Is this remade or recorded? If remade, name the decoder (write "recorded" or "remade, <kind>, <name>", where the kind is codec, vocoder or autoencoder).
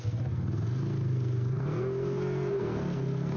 remade, codec, SNAC